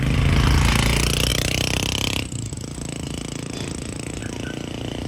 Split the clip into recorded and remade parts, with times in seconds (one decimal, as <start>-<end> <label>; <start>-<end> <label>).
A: 0.0-1.3 recorded; 1.3-4.2 remade; 4.2-5.1 recorded